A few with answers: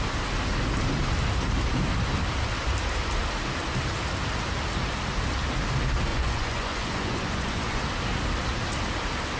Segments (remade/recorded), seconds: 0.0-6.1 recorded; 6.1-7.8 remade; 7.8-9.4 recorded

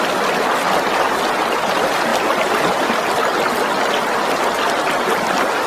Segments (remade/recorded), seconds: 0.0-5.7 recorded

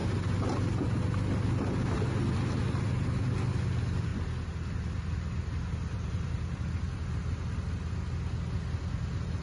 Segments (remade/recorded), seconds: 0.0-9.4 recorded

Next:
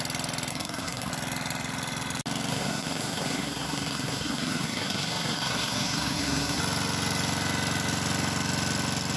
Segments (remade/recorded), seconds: 0.0-0.5 recorded; 0.5-1.1 remade; 1.1-2.5 recorded; 2.5-6.6 remade; 6.6-9.2 recorded